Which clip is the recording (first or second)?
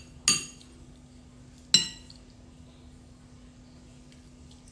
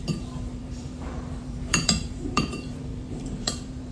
first